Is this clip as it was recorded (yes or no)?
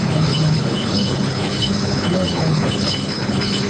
no